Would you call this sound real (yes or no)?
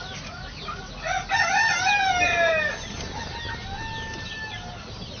yes